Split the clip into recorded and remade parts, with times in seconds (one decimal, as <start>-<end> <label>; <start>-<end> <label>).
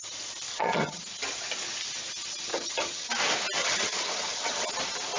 0.0-0.5 recorded; 0.5-1.0 remade; 1.0-2.5 recorded; 2.5-3.1 remade; 3.1-3.6 recorded; 3.6-4.7 remade; 4.7-5.2 recorded